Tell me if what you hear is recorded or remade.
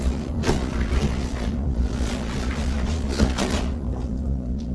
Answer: remade